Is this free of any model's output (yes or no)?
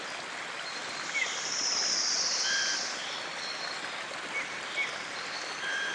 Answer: yes